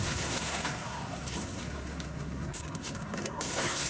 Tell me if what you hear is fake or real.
fake